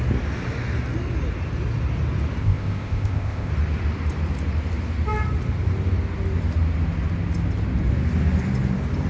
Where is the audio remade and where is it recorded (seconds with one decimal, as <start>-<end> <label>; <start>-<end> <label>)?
0.0-2.4 recorded; 2.4-3.5 remade; 3.5-9.1 recorded